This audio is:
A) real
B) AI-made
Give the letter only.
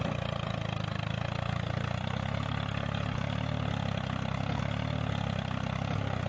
A